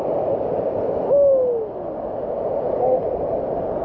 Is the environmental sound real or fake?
real